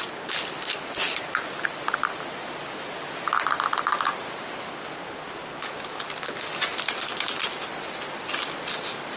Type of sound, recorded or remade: recorded